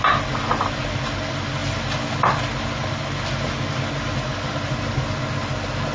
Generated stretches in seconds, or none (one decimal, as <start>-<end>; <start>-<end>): none